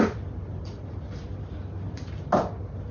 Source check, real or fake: real